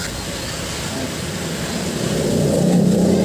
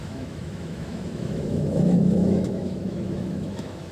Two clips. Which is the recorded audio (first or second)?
first